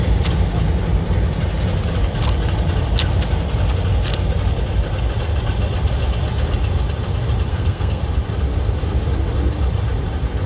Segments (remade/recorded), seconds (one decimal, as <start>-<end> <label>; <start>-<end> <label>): 0.0-7.5 recorded; 7.5-8.0 remade; 8.0-10.5 recorded